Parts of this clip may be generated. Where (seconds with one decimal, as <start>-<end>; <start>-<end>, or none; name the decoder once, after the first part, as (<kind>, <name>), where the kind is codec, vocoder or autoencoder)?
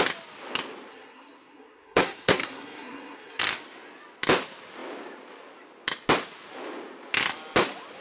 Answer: 0.9-3.4 (codec, SNAC)